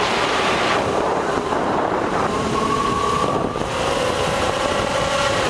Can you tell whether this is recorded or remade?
remade